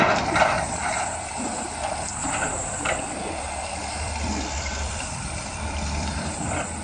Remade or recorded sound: remade